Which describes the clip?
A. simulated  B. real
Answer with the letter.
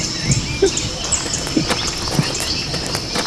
B